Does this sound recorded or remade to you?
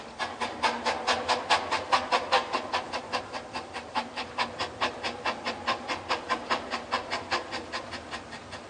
recorded